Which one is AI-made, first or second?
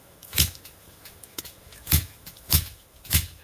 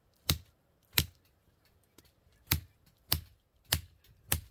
first